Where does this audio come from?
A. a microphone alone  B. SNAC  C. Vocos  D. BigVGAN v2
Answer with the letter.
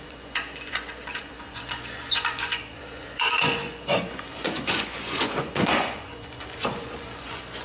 C